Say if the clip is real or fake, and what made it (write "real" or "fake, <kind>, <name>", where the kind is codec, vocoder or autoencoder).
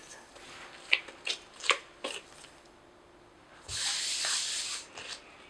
real